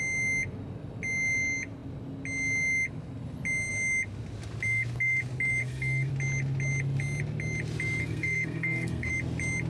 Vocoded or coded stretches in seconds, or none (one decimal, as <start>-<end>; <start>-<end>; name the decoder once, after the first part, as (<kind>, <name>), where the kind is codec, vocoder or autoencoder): 5.6-6.1 (codec, SNAC); 8.0-9.1